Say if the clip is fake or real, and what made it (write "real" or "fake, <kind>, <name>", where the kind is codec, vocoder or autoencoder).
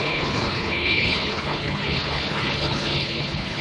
fake, codec, HILCodec